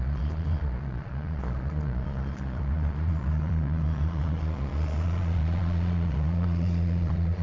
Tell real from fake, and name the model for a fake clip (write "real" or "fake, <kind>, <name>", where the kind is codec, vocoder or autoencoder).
fake, vocoder, Vocos